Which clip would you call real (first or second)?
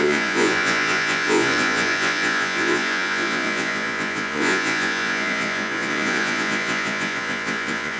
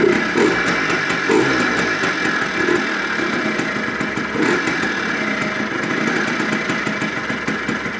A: second